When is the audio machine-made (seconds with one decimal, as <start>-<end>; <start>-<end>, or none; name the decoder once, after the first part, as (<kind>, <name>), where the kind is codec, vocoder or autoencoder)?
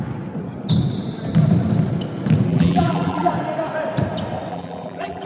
2.5-3.3 (vocoder, BigVGAN v2); 4.5-5.3